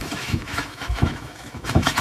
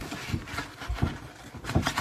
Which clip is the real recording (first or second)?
second